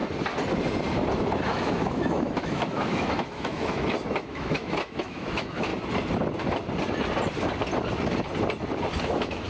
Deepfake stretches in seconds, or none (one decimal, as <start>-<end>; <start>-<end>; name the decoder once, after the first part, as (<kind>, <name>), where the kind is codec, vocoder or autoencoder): 1.5-5.7 (autoencoder, DAC-VAE); 9.0-9.5